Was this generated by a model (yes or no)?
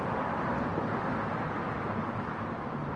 no